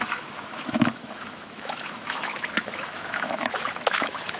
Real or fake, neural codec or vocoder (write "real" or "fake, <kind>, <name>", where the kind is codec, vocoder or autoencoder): fake, autoencoder, DAC-VAE